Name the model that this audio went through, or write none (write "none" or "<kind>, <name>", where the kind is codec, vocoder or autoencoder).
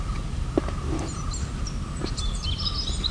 none